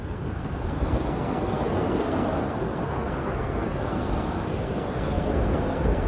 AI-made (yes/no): yes